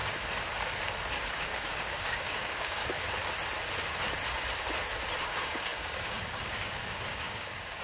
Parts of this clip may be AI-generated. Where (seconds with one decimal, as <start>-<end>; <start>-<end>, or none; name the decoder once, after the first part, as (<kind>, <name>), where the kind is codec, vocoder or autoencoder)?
1.3-2.8 (codec, DAC); 5.2-7.8